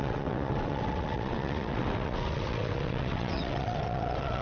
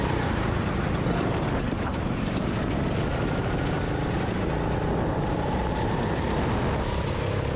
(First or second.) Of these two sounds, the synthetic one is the first